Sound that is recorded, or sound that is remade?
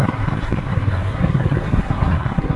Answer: remade